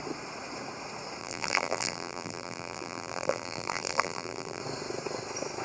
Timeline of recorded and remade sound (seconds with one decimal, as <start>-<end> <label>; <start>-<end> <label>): 0.0-1.2 recorded; 1.2-4.6 remade; 4.6-5.6 recorded